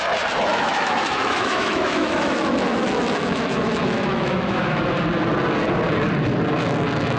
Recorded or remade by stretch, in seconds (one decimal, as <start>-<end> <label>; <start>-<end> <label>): 0.0-0.5 recorded; 0.5-4.8 remade; 4.8-7.2 recorded